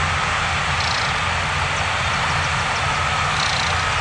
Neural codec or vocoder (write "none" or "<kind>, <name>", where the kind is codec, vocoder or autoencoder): none